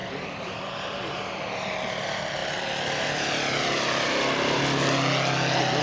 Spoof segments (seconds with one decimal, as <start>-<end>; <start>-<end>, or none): 0.0-1.4; 2.4-4.6